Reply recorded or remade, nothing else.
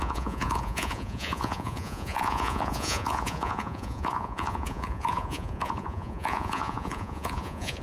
remade